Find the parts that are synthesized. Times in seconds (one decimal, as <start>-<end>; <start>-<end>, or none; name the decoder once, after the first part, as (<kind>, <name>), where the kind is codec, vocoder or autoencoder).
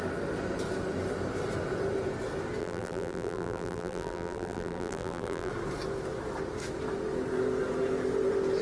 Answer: 2.6-5.5 (vocoder, BigVGAN v2)